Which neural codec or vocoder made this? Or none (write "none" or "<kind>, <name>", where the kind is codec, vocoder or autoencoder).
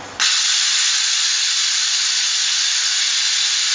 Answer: none